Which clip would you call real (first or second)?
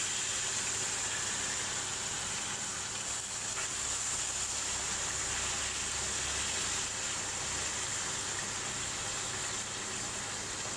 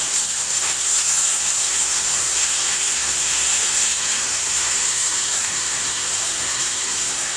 first